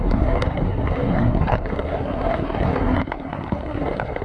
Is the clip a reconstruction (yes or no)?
yes